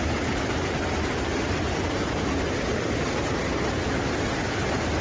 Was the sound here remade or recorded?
recorded